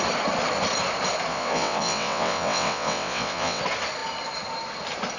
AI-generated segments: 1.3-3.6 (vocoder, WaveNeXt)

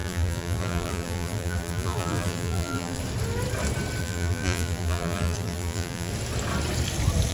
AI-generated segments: 0.0-3.0 (vocoder, BigVGAN v2); 4.0-6.1